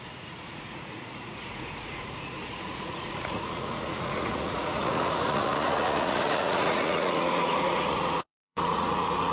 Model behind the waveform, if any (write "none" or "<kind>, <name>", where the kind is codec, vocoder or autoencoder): vocoder, Vocos